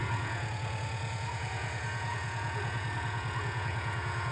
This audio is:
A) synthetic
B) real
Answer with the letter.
A